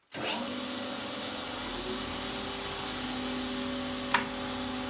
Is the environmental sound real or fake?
real